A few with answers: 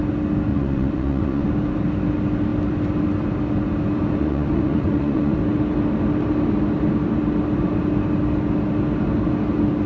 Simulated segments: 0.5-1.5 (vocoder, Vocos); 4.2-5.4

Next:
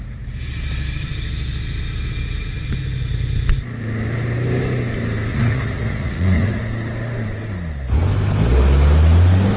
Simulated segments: 5.3-6.6 (vocoder, Vocos)

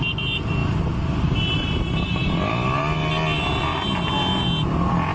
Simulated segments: none

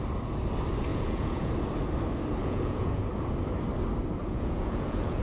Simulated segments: 0.9-1.5 (vocoder, Vocos); 2.4-3.0; 4.2-5.2

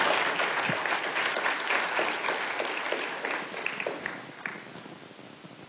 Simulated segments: none